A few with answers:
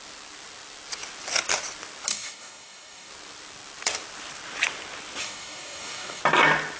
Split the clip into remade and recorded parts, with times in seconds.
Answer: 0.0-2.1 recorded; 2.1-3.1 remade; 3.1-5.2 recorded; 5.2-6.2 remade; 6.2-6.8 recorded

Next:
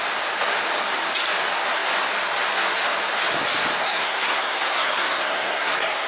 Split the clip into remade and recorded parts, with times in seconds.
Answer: 0.0-3.8 recorded; 3.8-6.1 remade

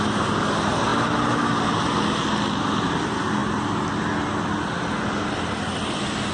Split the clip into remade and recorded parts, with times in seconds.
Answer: 0.0-6.3 recorded